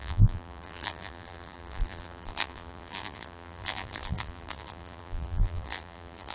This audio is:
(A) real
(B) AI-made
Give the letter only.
B